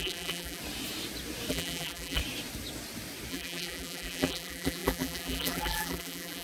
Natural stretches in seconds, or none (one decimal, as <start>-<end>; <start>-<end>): 0.6-1.5; 2.2-3.3